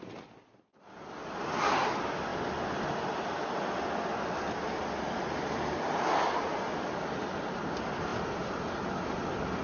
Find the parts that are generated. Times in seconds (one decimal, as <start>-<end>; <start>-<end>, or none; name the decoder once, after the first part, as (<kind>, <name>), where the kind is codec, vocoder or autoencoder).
none

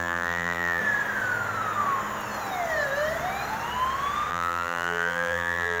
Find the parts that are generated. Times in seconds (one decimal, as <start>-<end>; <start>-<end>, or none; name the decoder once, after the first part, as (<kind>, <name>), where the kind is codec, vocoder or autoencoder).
0.0-0.8 (vocoder, BigVGAN v2); 4.3-5.8

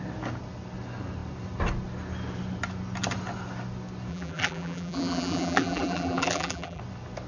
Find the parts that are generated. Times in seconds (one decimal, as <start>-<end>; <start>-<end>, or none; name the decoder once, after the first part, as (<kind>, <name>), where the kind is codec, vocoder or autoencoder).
4.1-6.8 (vocoder, BigVGAN v2)

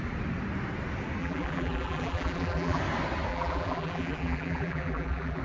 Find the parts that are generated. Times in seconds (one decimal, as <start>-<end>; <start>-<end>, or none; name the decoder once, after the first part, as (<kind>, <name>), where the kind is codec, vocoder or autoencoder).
1.2-2.8 (vocoder, BigVGAN v2); 3.3-5.4

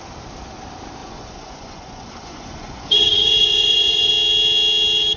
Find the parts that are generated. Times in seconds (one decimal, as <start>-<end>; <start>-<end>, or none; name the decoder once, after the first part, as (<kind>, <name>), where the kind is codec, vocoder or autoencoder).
1.0-4.1 (vocoder, Vocos)

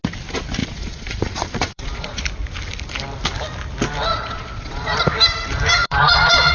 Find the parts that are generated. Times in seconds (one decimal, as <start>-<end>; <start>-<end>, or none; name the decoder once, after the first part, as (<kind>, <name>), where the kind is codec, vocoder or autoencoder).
0.6-2.2 (vocoder, Vocos); 4.1-5.0; 5.8-6.5